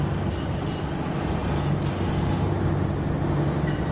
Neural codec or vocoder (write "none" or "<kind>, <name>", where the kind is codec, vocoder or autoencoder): none